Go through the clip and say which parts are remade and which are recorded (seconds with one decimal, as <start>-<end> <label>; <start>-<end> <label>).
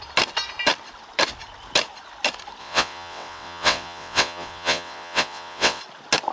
0.0-2.6 recorded; 2.6-5.8 remade; 5.8-6.3 recorded